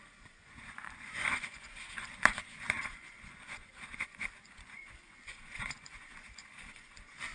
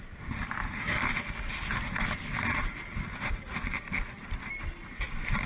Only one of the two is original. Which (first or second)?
second